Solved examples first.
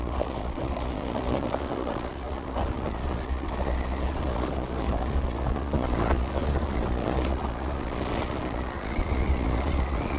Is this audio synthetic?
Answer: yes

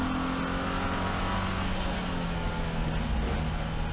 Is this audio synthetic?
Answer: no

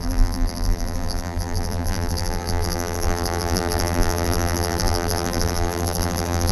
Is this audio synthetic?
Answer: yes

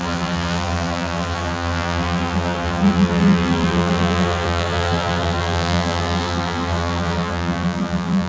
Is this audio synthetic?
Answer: yes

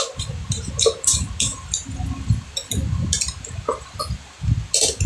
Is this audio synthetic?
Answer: no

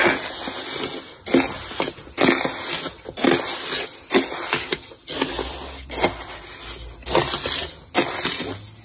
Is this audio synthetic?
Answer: no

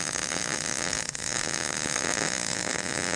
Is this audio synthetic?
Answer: yes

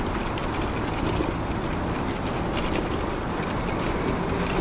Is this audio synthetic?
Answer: no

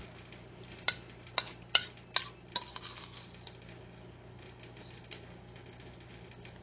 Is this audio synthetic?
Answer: no